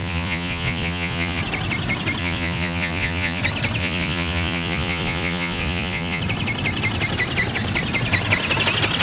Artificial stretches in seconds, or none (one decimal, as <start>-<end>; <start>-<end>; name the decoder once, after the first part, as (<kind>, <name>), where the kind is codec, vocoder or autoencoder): 0.0-1.4 (vocoder, Vocos); 2.2-3.4; 3.8-6.2